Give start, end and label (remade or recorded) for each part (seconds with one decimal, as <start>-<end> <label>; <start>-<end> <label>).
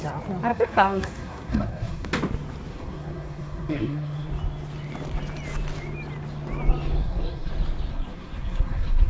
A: 0.0-0.5 recorded; 0.5-2.1 remade; 2.1-2.7 recorded; 2.7-4.3 remade; 4.3-7.0 recorded; 7.0-7.5 remade; 7.5-7.9 recorded; 7.9-9.1 remade